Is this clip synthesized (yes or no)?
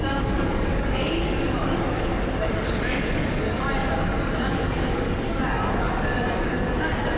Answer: yes